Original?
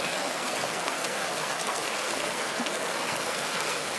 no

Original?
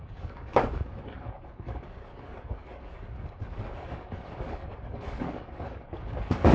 no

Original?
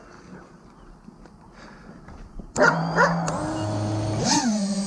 yes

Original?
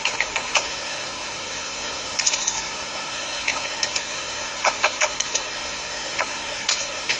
no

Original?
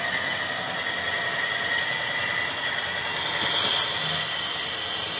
yes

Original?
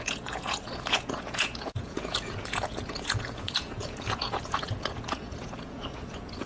no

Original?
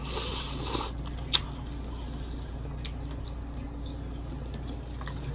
yes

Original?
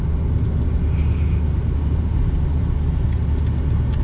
yes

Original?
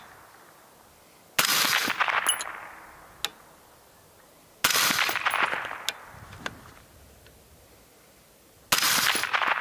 yes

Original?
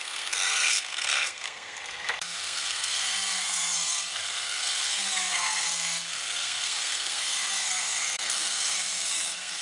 no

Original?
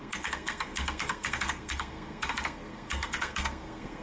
no